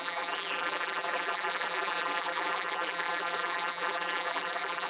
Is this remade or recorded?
remade